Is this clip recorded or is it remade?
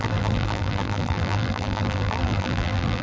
remade